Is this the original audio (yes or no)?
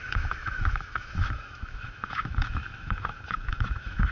no